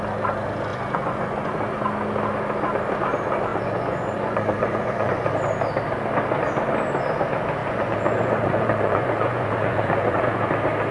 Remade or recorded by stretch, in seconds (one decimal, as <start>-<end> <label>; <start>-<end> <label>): 0.0-0.7 recorded; 0.7-1.5 remade; 1.5-3.5 recorded; 3.5-5.3 remade; 5.3-7.6 recorded; 7.6-10.5 remade; 10.5-10.9 recorded